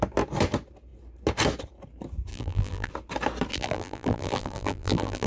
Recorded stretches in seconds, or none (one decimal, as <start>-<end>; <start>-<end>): 0.0-2.3; 2.9-3.5